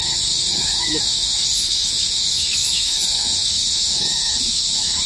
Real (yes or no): no